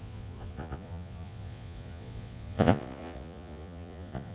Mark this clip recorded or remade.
remade